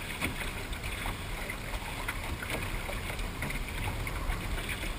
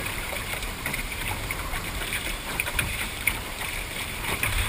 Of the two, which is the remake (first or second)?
second